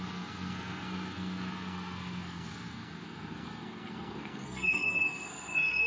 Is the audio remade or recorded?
remade